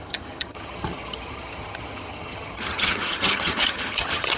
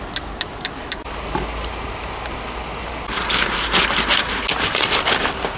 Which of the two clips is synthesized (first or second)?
first